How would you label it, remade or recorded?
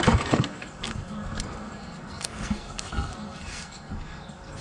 remade